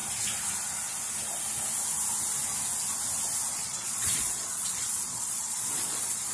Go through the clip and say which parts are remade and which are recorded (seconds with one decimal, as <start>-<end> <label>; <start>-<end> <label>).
0.0-3.5 recorded; 3.5-6.3 remade